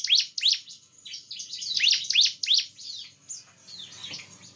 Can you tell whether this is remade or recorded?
recorded